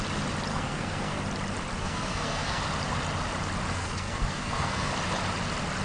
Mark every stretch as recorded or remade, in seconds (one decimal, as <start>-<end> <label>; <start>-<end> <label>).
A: 0.0-0.5 recorded; 0.5-1.2 remade; 1.2-1.8 recorded; 1.8-2.6 remade; 2.6-3.7 recorded; 3.7-4.9 remade; 4.9-5.8 recorded